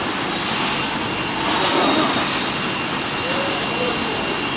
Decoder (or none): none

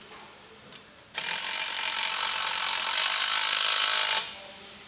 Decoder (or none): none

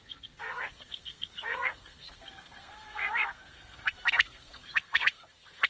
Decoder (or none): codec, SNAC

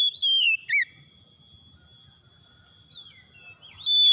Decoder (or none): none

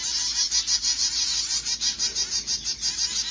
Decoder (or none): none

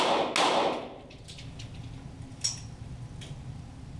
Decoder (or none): none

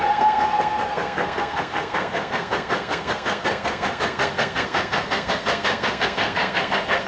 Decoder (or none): codec, SNAC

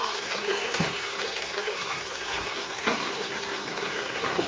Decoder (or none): codec, SNAC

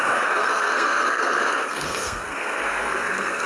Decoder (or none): codec, SNAC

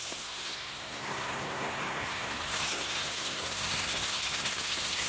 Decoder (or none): codec, SNAC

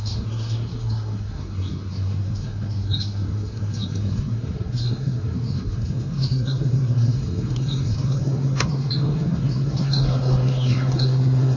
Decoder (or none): codec, SNAC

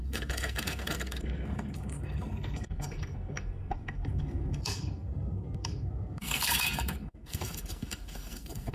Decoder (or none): codec, SNAC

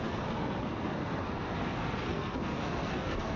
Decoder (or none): codec, SNAC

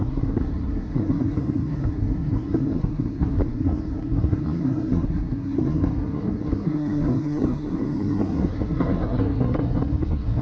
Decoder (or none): codec, SNAC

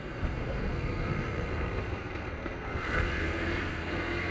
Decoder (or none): codec, SNAC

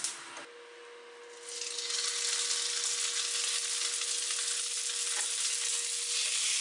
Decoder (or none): none